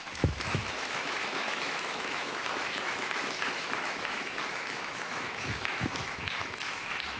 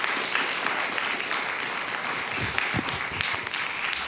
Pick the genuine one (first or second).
second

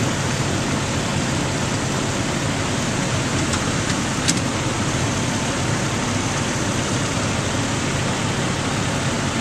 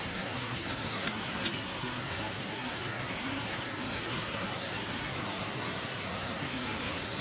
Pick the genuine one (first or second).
first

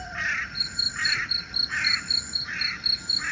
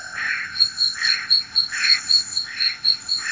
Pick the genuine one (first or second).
first